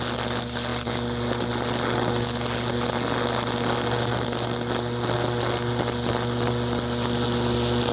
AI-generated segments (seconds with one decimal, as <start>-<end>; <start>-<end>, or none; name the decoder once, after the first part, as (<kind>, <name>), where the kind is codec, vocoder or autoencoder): none

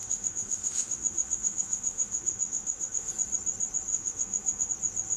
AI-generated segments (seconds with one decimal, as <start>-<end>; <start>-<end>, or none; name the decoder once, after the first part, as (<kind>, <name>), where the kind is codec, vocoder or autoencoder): 0.0-3.1 (autoencoder, DAC-VAE); 3.9-4.7